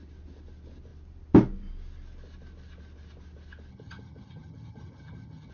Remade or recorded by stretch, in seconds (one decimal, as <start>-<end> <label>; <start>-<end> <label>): 0.0-3.7 recorded; 3.7-5.5 remade